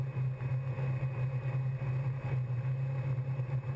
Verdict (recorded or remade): recorded